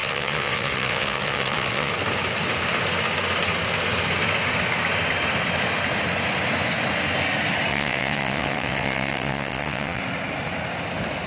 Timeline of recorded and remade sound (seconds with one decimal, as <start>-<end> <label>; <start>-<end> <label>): 0.0-1.9 remade; 1.9-7.7 recorded; 7.7-10.0 remade; 10.0-11.3 recorded